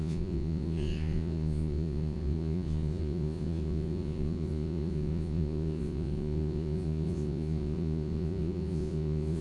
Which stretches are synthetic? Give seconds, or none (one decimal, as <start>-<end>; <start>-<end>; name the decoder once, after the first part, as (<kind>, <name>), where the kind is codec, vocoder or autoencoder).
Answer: 0.0-9.4 (vocoder, Vocos)